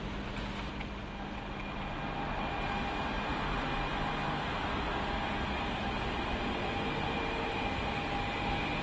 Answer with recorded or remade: recorded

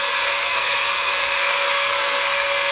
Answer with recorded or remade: remade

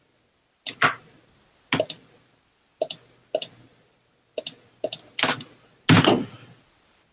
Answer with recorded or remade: recorded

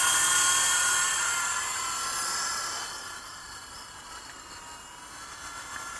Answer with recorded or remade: recorded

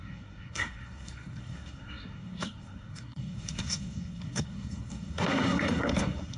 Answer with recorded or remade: remade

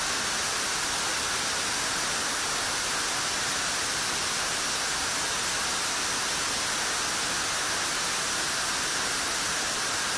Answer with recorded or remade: recorded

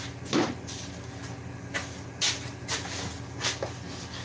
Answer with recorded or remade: recorded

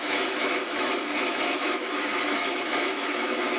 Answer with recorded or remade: remade